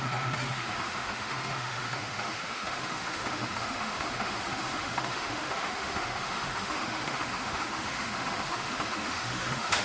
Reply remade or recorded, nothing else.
remade